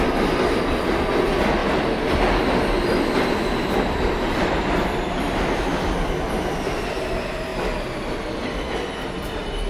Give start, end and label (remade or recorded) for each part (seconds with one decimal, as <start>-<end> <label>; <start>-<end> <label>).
0.0-9.7 recorded